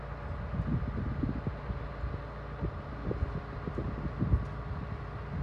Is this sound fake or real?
real